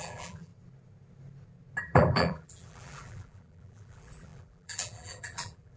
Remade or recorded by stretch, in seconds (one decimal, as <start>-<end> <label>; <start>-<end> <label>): 0.0-0.5 remade; 0.5-1.8 recorded; 1.8-5.8 remade